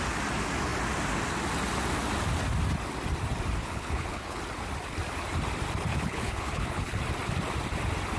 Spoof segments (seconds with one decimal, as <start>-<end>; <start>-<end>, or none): 3.6-4.4; 5.9-7.0